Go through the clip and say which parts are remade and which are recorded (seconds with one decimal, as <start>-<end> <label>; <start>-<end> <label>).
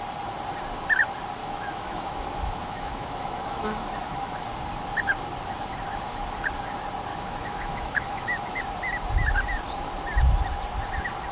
0.0-1.4 recorded; 1.4-4.4 remade; 4.4-7.1 recorded; 7.1-8.6 remade; 8.6-11.3 recorded